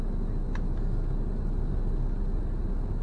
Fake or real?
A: real